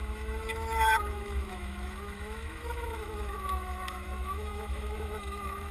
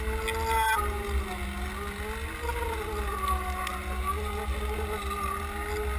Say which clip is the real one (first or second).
second